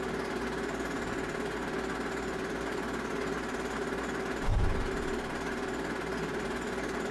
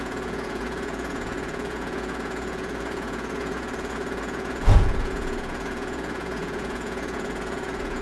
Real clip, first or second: first